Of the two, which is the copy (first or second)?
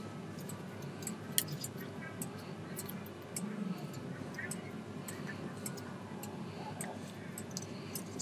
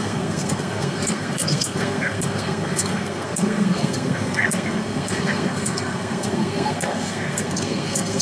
second